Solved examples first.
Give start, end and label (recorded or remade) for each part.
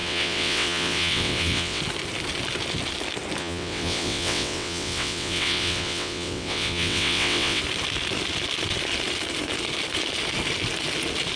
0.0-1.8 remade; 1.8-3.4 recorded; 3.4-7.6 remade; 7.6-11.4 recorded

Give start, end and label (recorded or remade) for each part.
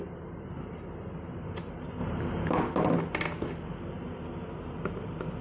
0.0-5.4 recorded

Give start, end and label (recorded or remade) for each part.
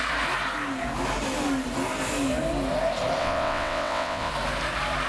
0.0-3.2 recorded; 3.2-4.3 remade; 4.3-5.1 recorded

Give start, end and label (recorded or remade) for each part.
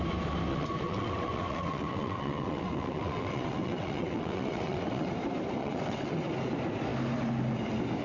0.0-0.5 recorded; 0.5-5.1 remade; 5.1-5.6 recorded; 5.6-6.3 remade; 6.3-8.0 recorded